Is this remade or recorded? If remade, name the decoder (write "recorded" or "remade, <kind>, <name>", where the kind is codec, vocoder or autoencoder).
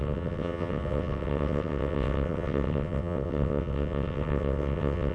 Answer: remade, vocoder, WaveNeXt